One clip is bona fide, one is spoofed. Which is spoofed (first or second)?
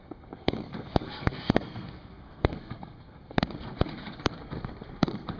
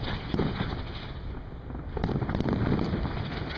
first